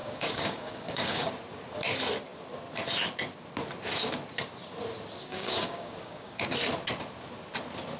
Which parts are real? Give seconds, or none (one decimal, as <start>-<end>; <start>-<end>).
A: 1.3-5.2; 6.4-8.0